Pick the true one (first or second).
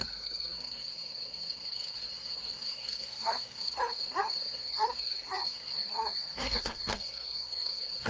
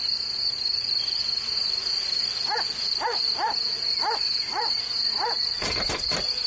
second